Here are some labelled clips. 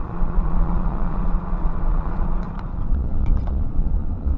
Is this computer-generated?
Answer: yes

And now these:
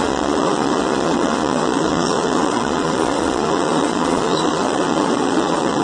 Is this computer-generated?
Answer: yes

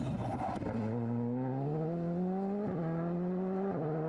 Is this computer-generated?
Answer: no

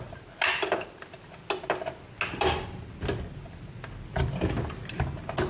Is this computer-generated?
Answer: no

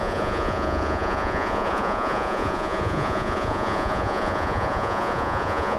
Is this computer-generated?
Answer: yes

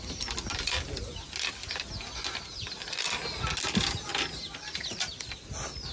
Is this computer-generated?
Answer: no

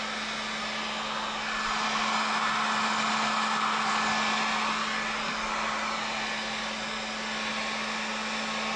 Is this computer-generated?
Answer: no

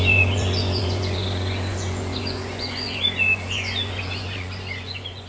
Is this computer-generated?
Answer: yes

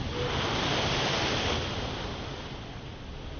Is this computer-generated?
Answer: no